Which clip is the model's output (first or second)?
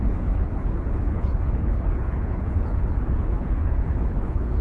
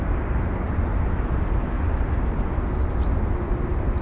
first